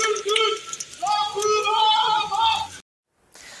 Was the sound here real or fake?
real